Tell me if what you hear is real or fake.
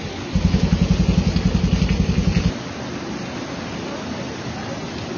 real